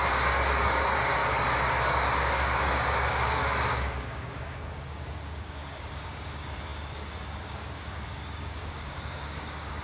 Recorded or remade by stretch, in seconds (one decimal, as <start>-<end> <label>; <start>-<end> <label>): 0.0-9.8 remade